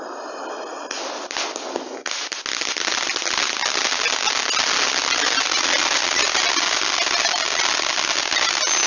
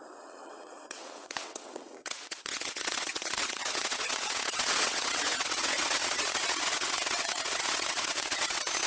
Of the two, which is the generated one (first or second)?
second